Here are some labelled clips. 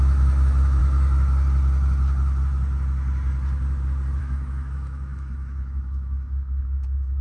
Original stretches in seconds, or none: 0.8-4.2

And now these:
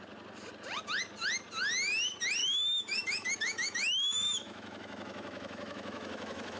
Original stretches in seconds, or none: 0.0-2.4

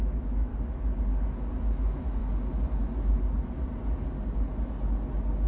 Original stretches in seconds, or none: 0.5-1.6; 2.2-5.5

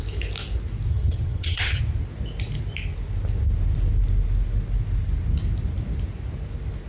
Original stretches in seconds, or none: 0.0-0.9; 1.8-6.9

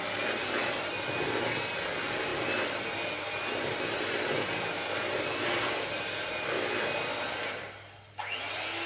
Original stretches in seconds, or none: 0.0-8.9

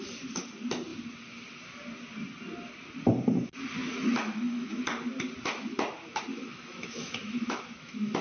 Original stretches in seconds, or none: 0.0-3.8; 4.8-6.3

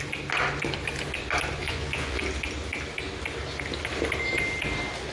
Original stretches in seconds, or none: 0.0-1.6; 2.2-5.1

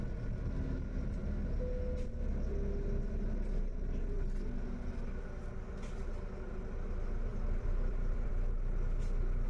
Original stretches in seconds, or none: 0.0-7.3; 8.3-9.5